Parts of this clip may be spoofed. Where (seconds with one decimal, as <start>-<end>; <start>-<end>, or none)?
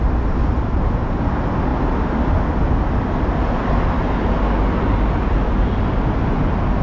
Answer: none